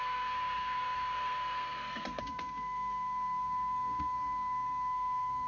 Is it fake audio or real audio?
fake